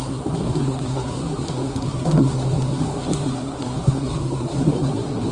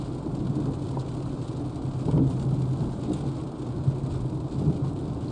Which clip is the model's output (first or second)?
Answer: first